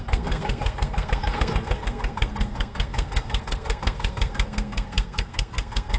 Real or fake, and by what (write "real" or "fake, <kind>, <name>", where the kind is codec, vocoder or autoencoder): fake, codec, SNAC